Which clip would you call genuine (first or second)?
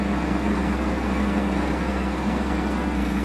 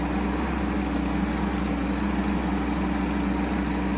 second